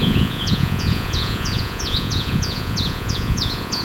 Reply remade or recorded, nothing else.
remade